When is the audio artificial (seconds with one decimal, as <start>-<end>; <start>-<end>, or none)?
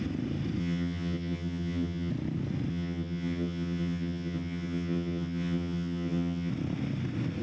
0.6-2.1; 2.7-6.5